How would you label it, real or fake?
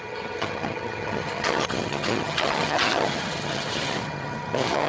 fake